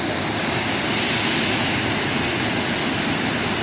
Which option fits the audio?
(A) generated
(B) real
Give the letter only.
B